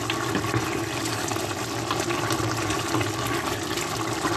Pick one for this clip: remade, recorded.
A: recorded